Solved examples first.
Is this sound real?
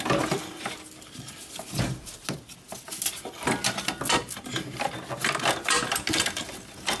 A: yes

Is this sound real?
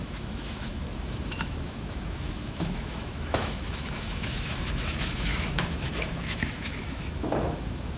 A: no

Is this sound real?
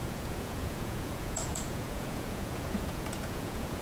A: no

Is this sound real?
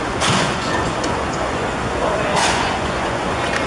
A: no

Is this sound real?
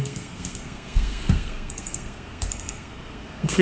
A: no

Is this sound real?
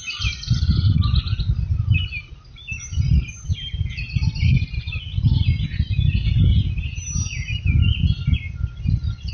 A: yes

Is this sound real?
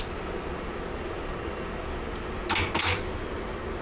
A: yes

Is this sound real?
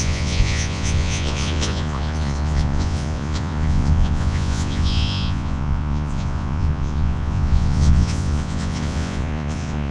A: no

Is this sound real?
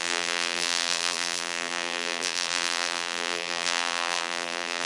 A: no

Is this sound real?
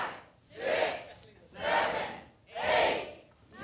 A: yes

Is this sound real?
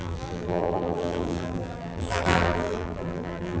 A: no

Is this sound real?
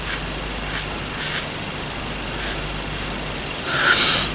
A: yes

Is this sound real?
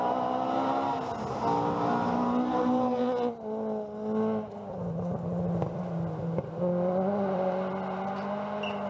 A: yes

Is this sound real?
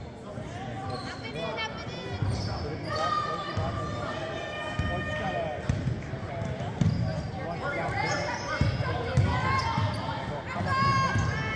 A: yes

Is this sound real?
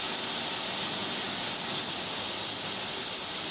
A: yes